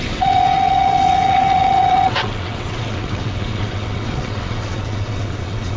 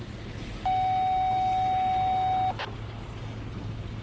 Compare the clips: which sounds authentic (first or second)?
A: second